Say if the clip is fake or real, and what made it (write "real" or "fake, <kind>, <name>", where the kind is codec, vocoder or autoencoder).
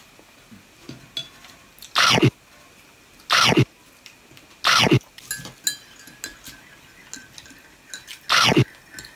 real